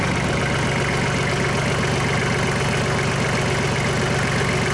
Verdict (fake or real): real